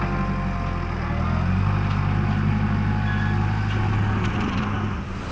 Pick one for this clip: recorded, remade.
recorded